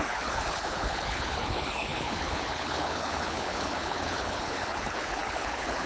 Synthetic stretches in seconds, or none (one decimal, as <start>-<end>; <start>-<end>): 0.0-5.9